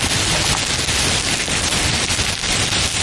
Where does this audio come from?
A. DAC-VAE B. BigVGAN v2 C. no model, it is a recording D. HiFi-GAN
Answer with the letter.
C